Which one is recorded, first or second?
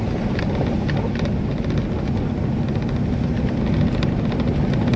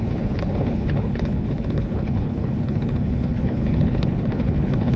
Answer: first